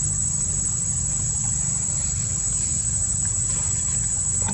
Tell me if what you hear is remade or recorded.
recorded